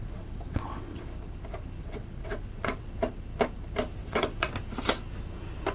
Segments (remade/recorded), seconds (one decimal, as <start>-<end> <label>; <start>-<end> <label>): 0.0-1.0 remade; 1.0-1.8 recorded; 1.8-2.9 remade; 2.9-4.0 recorded; 4.0-4.5 remade; 4.5-5.7 recorded